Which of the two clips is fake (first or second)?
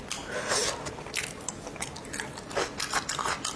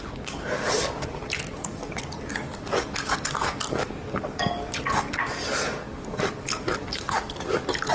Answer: second